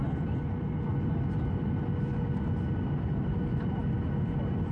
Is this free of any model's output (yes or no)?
yes